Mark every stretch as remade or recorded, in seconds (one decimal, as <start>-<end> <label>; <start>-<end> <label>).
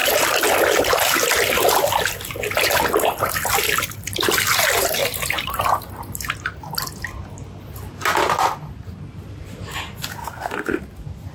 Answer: 0.0-10.2 recorded; 10.2-10.8 remade; 10.8-11.3 recorded